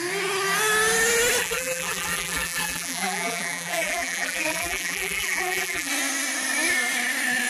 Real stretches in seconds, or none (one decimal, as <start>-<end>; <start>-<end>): 0.0-1.4; 5.9-7.5